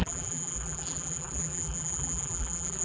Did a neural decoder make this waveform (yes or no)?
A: yes